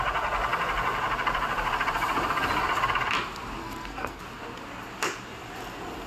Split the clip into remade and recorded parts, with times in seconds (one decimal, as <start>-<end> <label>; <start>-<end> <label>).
0.0-3.6 recorded; 3.6-4.2 remade; 4.2-6.1 recorded